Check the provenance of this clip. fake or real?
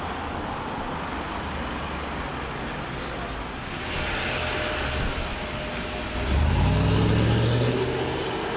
real